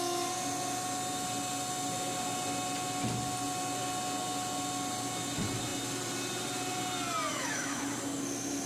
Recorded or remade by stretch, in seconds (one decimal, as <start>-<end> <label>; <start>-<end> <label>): 0.0-7.3 recorded; 7.3-7.8 remade; 7.8-8.7 recorded